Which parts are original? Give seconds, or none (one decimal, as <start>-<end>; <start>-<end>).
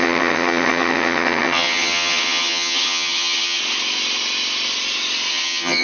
3.6-5.3